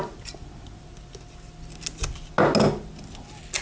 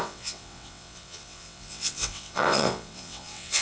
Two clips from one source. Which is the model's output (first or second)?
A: second